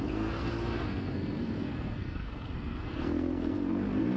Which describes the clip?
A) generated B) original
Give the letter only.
A